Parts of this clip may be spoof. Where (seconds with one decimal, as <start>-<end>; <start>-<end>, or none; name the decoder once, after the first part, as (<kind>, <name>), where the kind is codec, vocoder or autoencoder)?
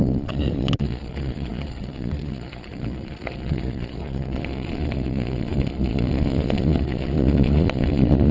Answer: 0.0-8.3 (vocoder, Vocos)